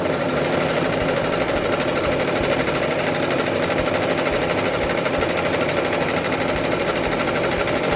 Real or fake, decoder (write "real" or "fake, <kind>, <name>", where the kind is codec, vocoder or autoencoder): real